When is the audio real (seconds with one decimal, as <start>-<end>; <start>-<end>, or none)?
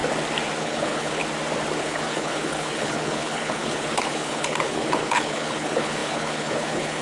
0.0-0.6; 1.2-1.8